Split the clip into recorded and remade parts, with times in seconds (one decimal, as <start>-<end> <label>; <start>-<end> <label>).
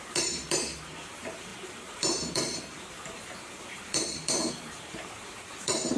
0.0-6.0 remade